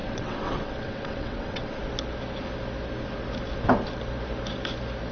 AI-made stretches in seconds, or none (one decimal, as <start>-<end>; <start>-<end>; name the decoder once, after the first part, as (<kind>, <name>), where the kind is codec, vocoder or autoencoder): 0.0-1.8 (vocoder, WaveNeXt)